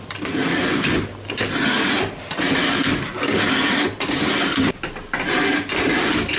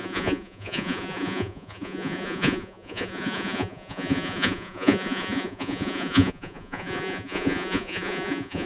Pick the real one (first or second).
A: first